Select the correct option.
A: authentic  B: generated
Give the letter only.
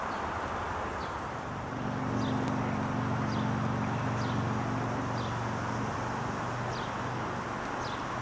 A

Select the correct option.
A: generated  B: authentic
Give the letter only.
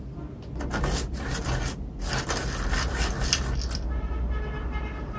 B